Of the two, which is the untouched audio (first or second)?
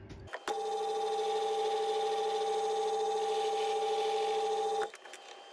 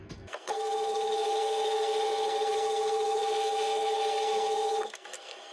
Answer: first